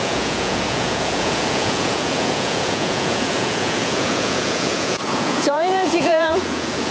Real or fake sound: fake